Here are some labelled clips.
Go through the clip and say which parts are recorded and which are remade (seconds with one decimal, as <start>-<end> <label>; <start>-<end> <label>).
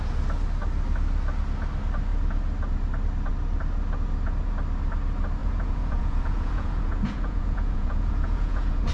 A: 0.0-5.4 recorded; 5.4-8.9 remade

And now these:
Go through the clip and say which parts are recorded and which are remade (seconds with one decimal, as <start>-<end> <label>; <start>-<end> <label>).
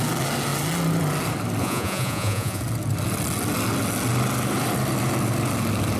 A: 0.0-1.6 recorded; 1.6-2.6 remade; 2.6-6.0 recorded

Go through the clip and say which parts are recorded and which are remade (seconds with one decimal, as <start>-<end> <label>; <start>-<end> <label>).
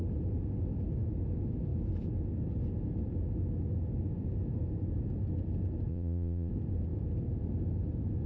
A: 0.0-5.9 recorded; 5.9-6.5 remade; 6.5-8.3 recorded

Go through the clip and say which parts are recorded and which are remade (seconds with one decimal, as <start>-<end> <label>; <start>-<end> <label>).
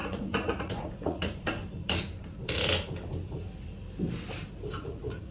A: 0.0-1.6 remade; 1.6-4.8 recorded; 4.8-5.3 remade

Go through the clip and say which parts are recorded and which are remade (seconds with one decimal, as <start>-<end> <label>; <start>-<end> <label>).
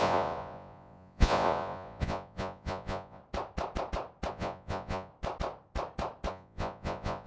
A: 0.0-3.2 remade; 3.2-4.3 recorded; 4.3-5.1 remade; 5.1-6.3 recorded; 6.3-7.3 remade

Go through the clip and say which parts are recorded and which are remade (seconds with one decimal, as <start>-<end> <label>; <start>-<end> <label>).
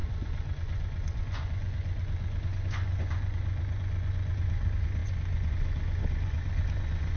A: 0.0-7.2 remade